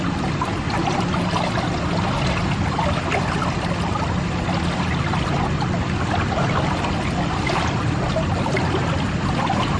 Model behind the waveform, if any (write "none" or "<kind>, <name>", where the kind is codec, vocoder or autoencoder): none